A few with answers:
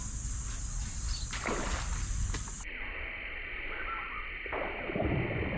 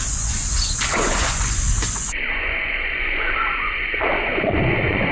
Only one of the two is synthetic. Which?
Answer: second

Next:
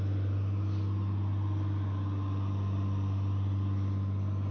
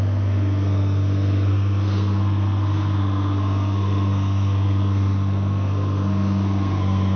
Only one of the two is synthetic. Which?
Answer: second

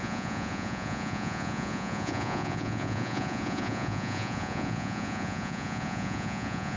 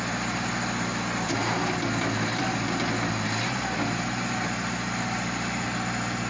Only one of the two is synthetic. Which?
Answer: first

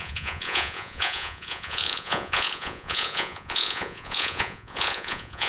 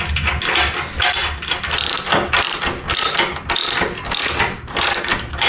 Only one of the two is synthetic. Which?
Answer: first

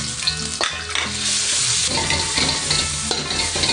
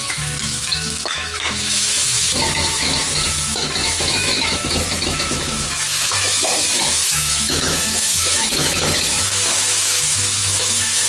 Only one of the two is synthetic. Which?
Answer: second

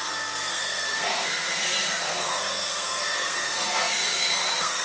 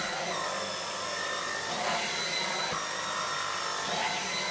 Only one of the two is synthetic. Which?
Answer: first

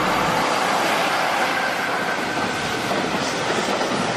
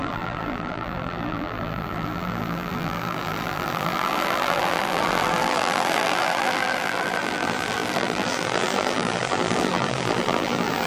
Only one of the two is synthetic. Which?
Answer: second